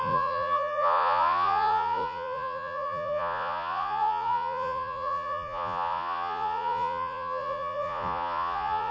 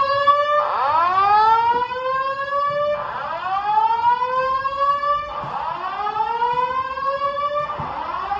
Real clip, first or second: second